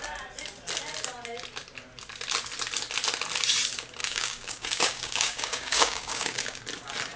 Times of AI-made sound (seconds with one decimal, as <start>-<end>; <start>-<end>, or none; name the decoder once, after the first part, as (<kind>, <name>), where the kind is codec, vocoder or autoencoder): 4.0-6.6 (codec, DAC)